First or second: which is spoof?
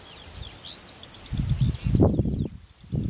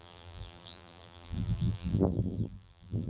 second